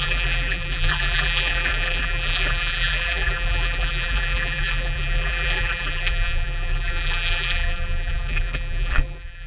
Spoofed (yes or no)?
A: yes